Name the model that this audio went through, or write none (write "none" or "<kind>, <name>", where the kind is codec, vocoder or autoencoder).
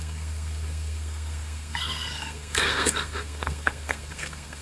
codec, SNAC